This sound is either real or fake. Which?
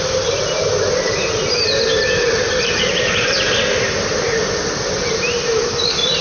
real